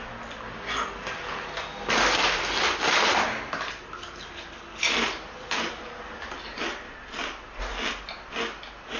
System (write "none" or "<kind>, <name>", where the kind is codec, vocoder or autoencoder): none